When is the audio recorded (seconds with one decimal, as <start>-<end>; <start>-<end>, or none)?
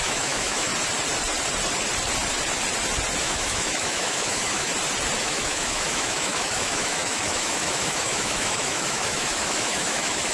0.7-3.2; 4.7-5.2